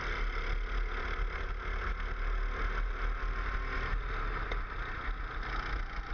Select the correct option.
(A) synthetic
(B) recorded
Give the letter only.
B